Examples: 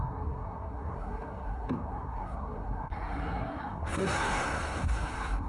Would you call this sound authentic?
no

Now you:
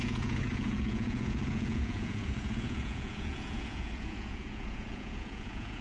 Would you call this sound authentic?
no